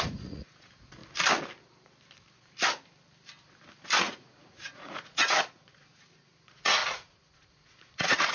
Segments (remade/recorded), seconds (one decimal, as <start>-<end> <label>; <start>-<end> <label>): 0.0-1.0 remade; 1.0-4.0 recorded; 4.0-8.3 remade